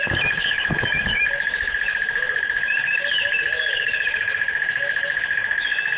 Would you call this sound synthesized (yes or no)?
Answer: yes